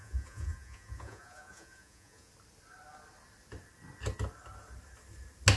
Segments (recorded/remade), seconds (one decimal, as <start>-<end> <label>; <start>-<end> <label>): 0.0-2.3 remade; 2.3-5.6 recorded